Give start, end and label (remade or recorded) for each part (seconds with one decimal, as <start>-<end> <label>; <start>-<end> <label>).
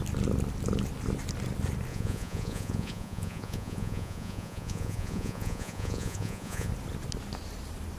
0.0-1.9 recorded; 1.9-6.7 remade; 6.7-8.0 recorded